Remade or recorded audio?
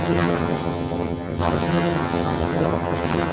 remade